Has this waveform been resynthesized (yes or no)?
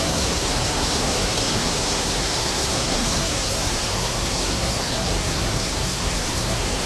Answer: yes